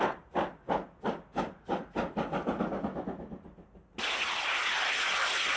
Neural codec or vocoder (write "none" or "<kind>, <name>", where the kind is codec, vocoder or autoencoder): none